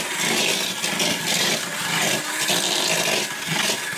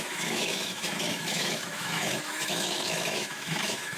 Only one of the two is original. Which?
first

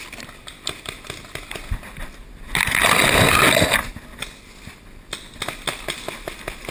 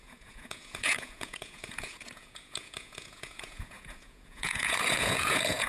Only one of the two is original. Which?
first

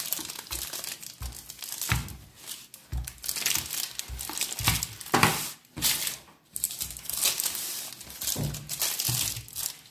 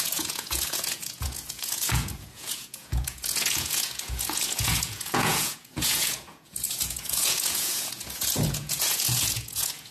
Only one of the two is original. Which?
first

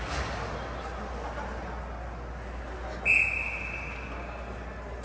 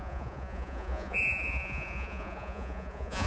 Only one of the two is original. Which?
first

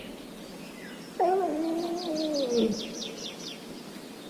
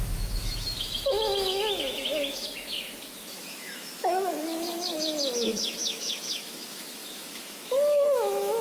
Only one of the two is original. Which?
first